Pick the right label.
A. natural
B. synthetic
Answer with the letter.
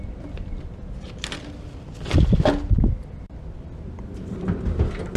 A